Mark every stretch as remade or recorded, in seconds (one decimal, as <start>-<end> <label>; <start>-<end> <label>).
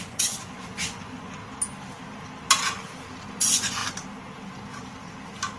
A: 0.0-1.4 remade; 1.4-3.3 recorded; 3.3-3.8 remade; 3.8-5.6 recorded